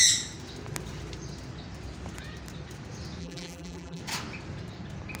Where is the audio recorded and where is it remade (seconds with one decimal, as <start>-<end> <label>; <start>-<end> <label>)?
0.0-3.2 recorded; 3.2-4.0 remade; 4.0-5.2 recorded